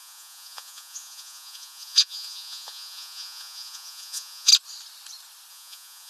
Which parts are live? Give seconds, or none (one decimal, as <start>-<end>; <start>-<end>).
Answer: 4.5-5.5